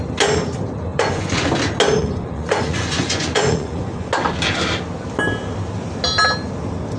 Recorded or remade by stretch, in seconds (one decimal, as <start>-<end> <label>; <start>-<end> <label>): 0.0-0.9 recorded; 0.9-1.5 remade; 1.5-2.0 recorded; 2.0-4.1 remade; 4.1-7.0 recorded